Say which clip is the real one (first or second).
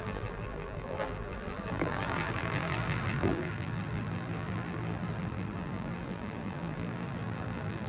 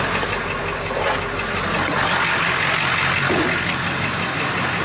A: second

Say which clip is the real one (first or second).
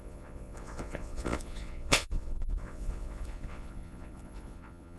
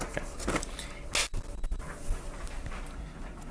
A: second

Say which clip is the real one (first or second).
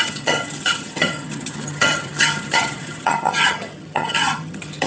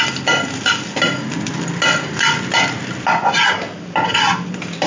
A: second